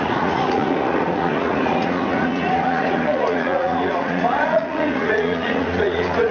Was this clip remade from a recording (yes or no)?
yes